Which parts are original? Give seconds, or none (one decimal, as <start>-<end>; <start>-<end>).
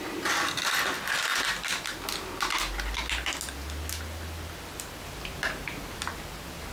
0.0-6.7